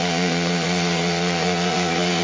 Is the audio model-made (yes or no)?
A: yes